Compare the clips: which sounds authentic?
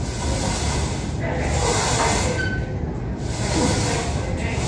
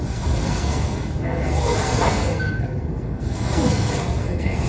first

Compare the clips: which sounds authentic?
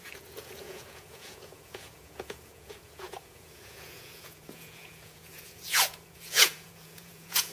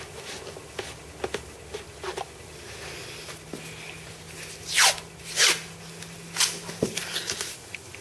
second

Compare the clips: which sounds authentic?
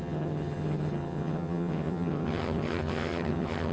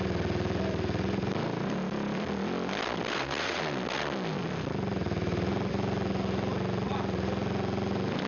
second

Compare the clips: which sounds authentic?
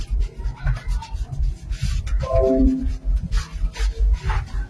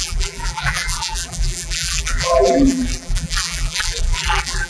first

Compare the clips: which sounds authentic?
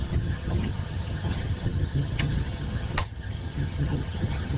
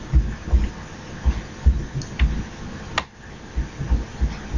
second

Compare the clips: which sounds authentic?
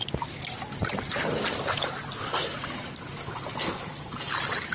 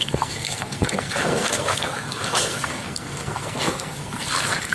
first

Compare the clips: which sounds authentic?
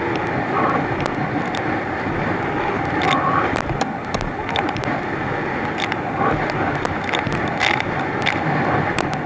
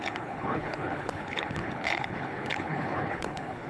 first